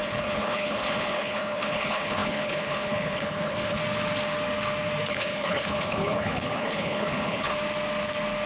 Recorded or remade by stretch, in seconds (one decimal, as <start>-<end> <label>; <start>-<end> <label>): 0.0-3.8 remade; 3.8-5.1 recorded; 5.1-7.5 remade; 7.5-8.5 recorded